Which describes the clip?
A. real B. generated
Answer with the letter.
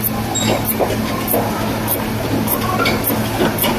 A